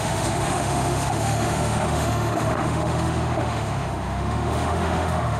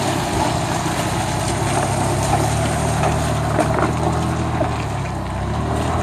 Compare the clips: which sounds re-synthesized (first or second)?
first